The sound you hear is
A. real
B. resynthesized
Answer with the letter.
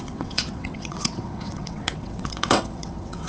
B